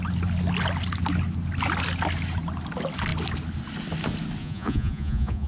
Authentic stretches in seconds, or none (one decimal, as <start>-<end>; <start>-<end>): 0.0-4.4